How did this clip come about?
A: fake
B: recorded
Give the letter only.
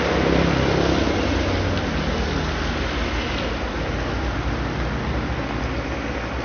B